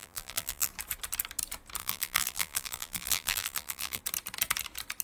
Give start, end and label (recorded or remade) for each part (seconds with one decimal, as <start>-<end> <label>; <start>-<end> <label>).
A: 0.0-0.7 remade; 0.7-1.8 recorded; 1.8-4.0 remade; 4.0-5.0 recorded